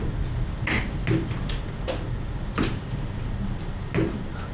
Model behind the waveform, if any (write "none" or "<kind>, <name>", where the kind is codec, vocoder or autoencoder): none